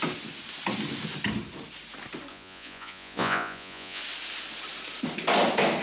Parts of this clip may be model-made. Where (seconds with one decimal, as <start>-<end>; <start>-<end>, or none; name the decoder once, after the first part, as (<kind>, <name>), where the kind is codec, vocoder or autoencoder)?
2.3-4.0 (vocoder, Vocos)